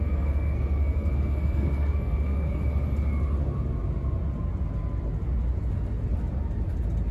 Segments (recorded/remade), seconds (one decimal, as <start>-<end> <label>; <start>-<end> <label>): 0.0-2.6 remade; 2.6-7.1 recorded